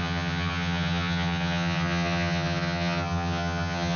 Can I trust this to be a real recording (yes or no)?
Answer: no